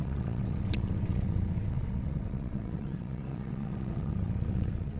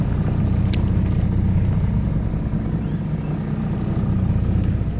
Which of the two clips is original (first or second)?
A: second